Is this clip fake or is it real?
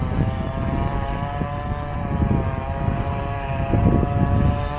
real